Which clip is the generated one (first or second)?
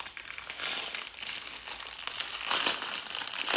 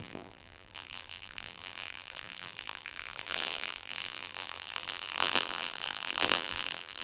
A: second